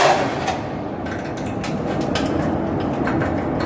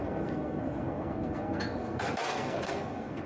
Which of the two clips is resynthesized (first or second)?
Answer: second